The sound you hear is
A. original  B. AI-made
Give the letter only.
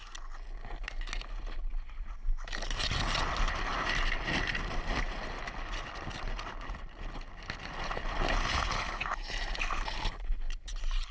A